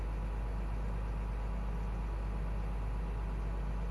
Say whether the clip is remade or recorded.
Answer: recorded